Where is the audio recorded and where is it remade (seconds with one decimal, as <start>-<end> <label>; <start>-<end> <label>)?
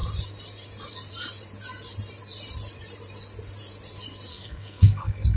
0.0-4.3 recorded; 4.3-5.4 remade